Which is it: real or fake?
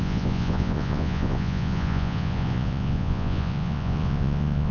fake